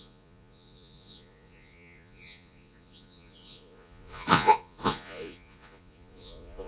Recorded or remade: remade